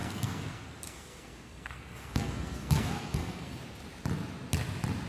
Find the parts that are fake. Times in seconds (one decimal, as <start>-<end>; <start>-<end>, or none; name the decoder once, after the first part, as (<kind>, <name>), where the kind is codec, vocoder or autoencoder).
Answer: 0.0-3.6 (codec, SNAC)